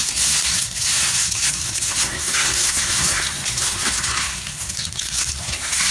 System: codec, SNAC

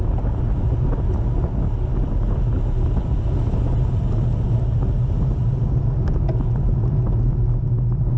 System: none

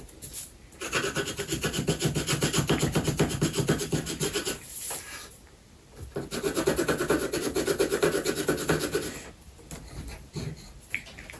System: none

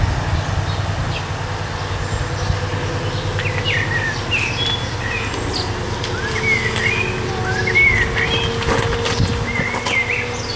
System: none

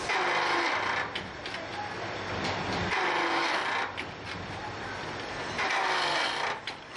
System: none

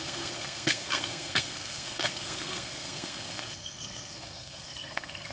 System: codec, SNAC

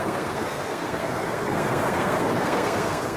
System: codec, SNAC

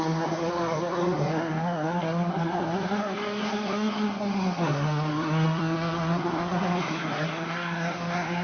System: codec, SNAC